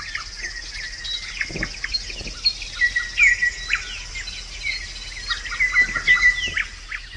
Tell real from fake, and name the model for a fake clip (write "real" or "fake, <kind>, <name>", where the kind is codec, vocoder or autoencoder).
real